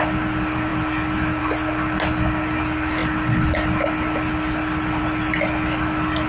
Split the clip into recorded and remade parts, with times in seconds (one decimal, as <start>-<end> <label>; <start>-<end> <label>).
0.0-6.3 recorded